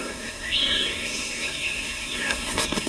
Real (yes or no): no